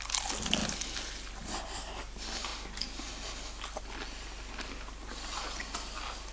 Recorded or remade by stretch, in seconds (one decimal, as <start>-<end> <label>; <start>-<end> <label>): 0.0-6.3 recorded

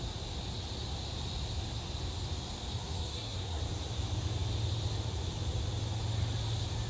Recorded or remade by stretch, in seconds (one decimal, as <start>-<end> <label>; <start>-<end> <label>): 0.0-2.8 recorded; 2.8-3.6 remade; 3.6-6.9 recorded

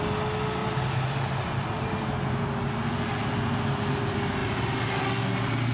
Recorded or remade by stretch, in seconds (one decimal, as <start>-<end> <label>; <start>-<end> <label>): 0.0-0.6 recorded; 0.6-1.9 remade; 1.9-5.7 recorded

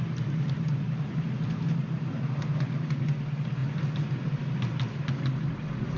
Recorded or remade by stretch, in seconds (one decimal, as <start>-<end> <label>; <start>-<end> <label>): 0.0-6.0 recorded

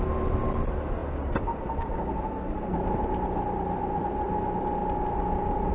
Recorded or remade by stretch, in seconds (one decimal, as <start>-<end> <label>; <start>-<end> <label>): 0.0-5.7 recorded